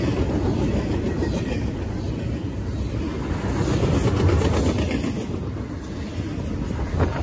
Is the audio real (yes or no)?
yes